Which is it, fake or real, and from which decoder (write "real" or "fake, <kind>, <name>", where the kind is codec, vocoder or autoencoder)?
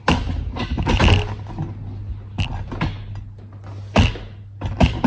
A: real